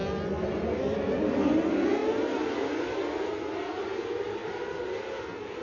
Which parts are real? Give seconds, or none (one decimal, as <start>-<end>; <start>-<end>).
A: 0.0-5.6